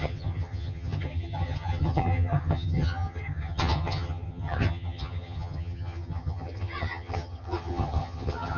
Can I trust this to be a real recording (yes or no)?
no